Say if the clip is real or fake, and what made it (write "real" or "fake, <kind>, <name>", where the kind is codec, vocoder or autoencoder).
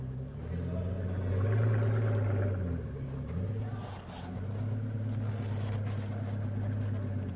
real